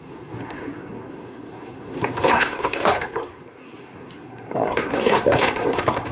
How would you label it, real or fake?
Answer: fake